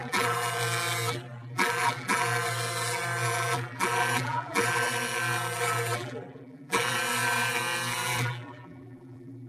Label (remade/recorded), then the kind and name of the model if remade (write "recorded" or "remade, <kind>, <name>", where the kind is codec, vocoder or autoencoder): remade, vocoder, BigVGAN v2